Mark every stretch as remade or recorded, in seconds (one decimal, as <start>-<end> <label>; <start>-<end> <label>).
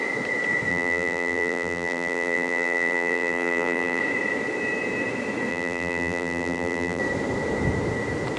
0.0-0.7 recorded; 0.7-4.0 remade; 4.0-5.5 recorded; 5.5-7.0 remade; 7.0-8.4 recorded